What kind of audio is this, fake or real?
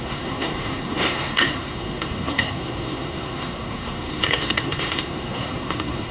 fake